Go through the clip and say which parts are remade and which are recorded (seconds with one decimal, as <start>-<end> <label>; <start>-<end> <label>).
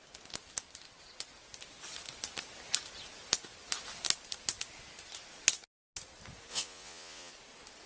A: 0.0-6.5 recorded; 6.5-7.3 remade; 7.3-7.9 recorded